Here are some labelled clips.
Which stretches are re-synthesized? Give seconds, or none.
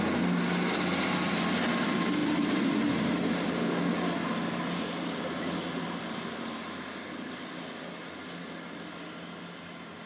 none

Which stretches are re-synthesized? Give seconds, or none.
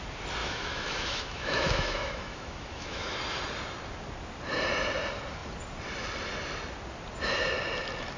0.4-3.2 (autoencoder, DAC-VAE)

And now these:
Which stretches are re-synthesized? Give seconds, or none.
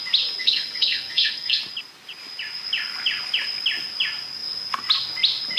0.4-1.6 (codec, SNAC)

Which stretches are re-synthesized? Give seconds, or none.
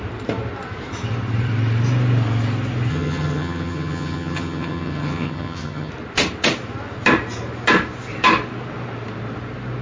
2.9-5.9 (vocoder, HiFi-GAN)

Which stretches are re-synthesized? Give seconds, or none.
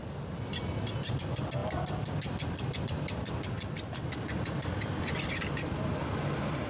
none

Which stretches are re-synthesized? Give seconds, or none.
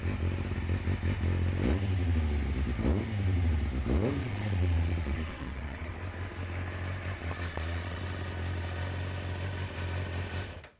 4.2-5.9 (vocoder, Vocos); 7.2-8.0